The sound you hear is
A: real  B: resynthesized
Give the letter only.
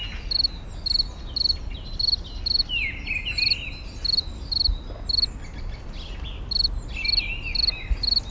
A